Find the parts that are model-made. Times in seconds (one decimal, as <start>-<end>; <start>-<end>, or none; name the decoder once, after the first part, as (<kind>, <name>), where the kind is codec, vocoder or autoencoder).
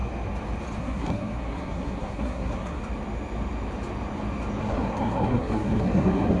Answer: 0.8-2.8 (codec, SNAC); 4.6-6.4